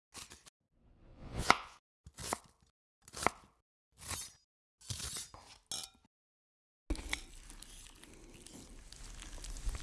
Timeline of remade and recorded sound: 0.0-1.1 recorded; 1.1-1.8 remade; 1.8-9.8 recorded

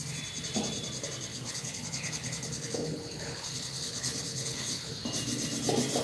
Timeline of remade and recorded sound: 0.0-1.3 recorded; 1.3-4.9 remade; 4.9-6.0 recorded

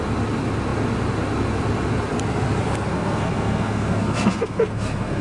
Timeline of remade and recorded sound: 0.0-2.9 recorded; 2.9-5.2 remade